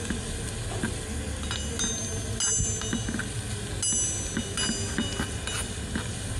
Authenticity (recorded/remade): recorded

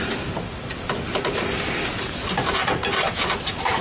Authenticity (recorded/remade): remade